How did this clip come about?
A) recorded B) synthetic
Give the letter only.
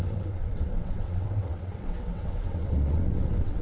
B